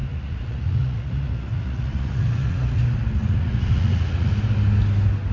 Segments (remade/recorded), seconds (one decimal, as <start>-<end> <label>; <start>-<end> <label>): 0.0-2.8 remade; 2.8-3.2 recorded; 3.2-4.3 remade; 4.3-5.3 recorded